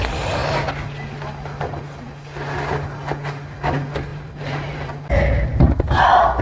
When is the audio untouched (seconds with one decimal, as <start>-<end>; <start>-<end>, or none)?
0.0-4.1; 6.0-6.4

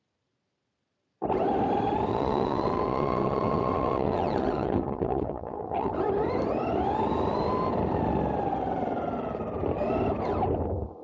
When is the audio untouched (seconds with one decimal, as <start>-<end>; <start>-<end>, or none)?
0.0-2.1; 5.9-11.0

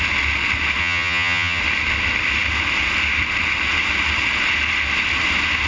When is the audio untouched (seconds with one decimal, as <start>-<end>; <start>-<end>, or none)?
0.0-0.8; 1.6-5.7

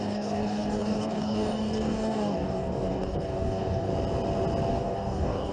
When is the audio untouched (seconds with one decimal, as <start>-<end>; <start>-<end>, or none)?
3.9-4.7

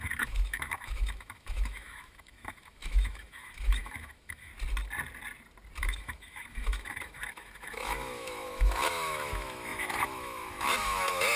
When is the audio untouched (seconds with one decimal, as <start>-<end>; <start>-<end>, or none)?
4.5-5.8

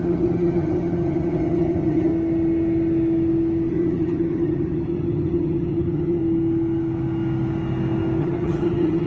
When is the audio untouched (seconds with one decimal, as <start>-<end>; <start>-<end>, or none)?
2.1-3.7; 6.2-8.2

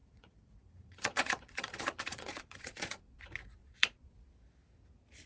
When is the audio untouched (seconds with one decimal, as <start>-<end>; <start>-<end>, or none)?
3.2-3.6; 4.3-5.3